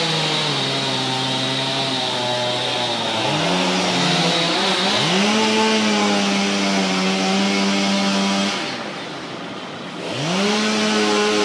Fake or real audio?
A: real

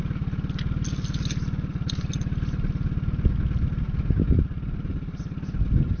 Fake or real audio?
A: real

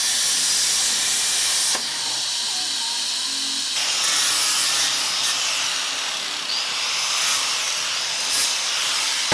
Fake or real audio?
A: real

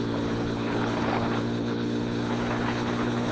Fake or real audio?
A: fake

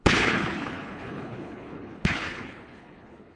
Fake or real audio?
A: fake